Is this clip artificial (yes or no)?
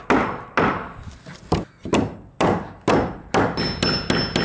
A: no